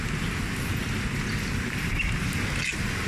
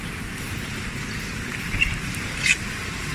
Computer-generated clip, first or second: second